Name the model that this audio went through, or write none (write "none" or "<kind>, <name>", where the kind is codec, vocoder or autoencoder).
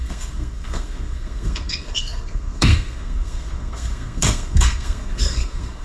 codec, SNAC